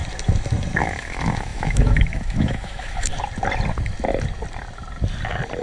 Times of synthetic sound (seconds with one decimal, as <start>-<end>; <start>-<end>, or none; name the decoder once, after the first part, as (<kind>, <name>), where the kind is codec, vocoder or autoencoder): 0.8-3.1 (autoencoder, DAC-VAE)